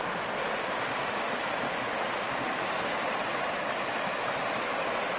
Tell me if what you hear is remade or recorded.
recorded